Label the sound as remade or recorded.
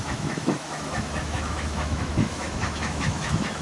remade